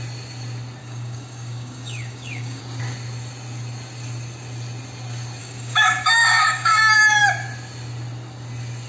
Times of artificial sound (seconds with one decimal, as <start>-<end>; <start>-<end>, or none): 0.8-2.6; 5.4-6.8